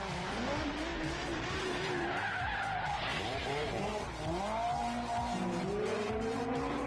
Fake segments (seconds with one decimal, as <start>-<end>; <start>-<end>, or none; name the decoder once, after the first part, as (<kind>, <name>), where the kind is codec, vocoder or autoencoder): 0.9-1.8 (vocoder, BigVGAN v2)